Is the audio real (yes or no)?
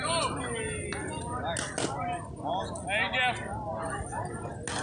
yes